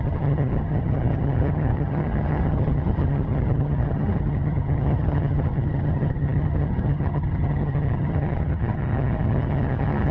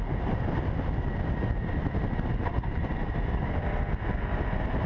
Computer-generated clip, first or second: first